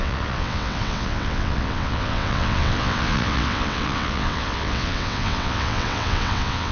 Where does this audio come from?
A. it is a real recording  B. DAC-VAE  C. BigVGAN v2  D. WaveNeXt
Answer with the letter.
D